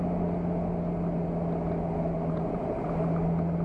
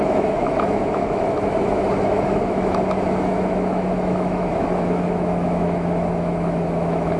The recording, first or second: first